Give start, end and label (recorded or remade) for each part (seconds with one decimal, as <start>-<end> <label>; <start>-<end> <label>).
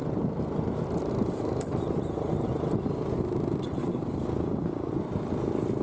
0.0-3.8 recorded; 3.8-4.9 remade; 4.9-5.8 recorded